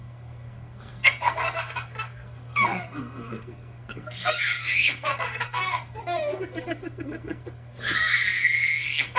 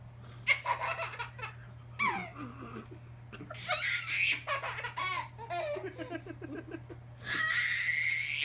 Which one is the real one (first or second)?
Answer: second